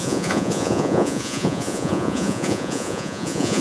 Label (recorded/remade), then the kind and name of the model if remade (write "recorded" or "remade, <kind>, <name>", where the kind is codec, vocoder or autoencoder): remade, vocoder, Vocos